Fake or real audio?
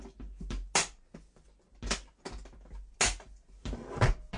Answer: real